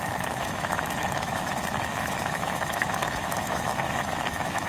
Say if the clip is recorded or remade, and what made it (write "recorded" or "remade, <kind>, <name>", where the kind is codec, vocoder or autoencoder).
remade, autoencoder, DAC-VAE